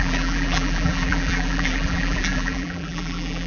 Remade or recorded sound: remade